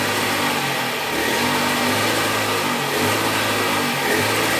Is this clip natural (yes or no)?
yes